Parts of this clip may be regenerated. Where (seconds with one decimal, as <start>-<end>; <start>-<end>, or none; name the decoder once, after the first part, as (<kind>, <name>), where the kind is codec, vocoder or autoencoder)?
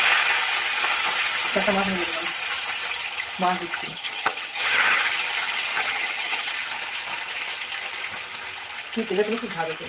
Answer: 3.8-5.0 (vocoder, HiFi-GAN); 5.7-6.5